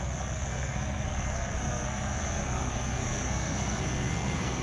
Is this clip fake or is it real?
fake